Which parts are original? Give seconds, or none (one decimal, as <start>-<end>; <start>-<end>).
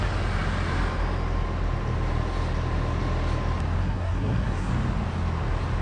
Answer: 0.0-3.8; 4.7-5.8